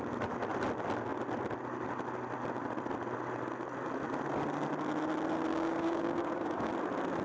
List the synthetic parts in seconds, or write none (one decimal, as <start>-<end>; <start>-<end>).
5.5-6.7